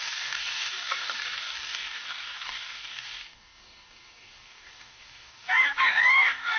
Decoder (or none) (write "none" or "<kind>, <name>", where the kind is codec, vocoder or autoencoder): codec, DAC